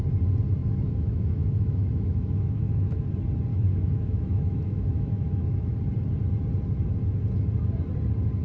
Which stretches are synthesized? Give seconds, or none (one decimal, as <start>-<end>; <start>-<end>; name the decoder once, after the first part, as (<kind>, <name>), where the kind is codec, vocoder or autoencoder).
0.6-3.1 (autoencoder, DAC-VAE); 3.5-5.8